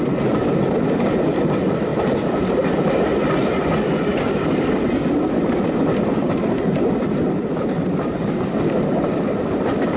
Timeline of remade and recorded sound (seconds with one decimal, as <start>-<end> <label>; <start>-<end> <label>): 0.0-10.0 recorded